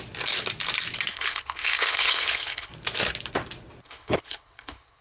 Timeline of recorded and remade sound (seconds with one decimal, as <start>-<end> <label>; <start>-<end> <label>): 0.0-1.1 recorded; 1.1-2.7 remade; 2.7-3.8 recorded; 3.8-5.0 remade